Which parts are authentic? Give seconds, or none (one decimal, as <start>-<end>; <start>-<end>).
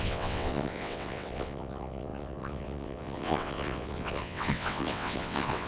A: none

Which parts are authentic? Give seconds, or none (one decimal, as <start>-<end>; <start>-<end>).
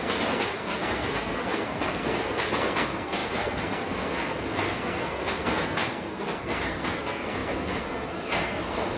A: none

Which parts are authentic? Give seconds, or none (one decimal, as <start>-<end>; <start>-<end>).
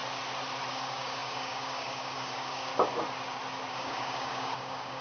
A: 0.0-0.7; 2.7-3.7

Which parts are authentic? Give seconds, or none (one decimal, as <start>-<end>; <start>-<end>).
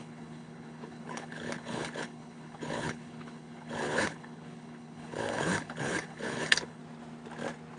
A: 6.8-7.8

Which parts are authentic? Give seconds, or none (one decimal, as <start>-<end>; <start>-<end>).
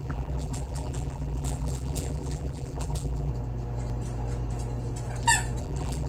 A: 3.3-5.6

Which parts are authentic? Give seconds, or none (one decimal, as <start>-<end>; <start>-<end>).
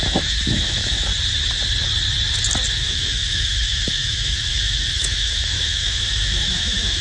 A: 1.1-2.7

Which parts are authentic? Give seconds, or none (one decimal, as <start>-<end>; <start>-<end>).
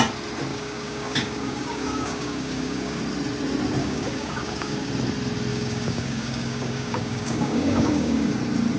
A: 0.0-0.5; 3.0-3.8; 4.9-5.5; 8.3-8.8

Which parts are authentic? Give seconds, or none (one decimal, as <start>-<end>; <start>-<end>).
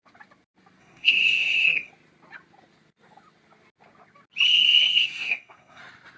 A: 0.0-0.8; 1.9-4.5; 5.8-6.2